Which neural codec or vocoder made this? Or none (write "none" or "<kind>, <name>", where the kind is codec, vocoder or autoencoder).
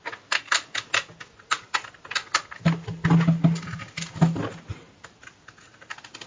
none